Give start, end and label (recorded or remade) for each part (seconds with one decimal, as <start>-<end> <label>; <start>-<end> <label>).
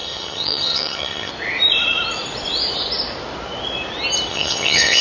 0.0-1.3 remade; 1.3-4.3 recorded; 4.3-5.0 remade